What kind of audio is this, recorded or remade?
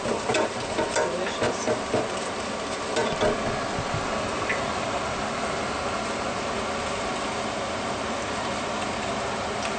recorded